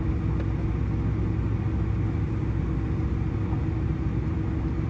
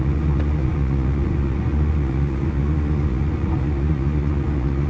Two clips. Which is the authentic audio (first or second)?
first